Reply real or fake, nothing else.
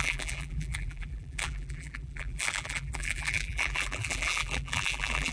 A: fake